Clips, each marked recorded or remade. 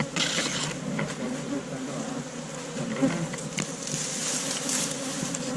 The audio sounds recorded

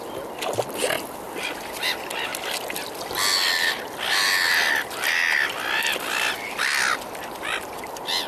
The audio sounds recorded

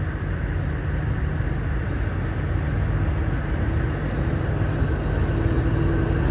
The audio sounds recorded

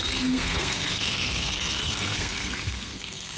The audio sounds remade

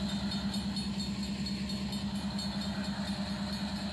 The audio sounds recorded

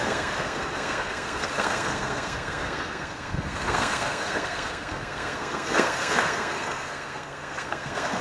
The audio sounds remade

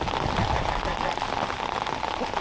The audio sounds recorded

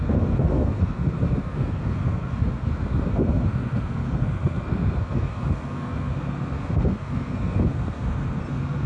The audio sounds remade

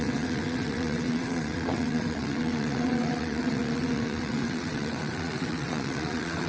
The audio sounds remade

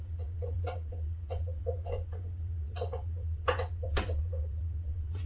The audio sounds remade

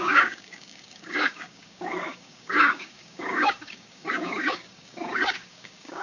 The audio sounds remade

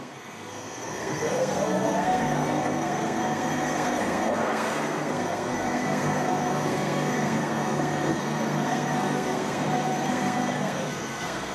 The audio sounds remade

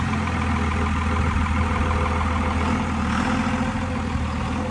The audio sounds recorded